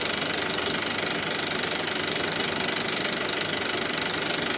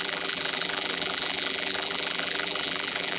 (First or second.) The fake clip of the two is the second